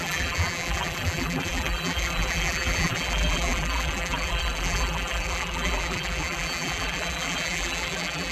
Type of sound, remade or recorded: remade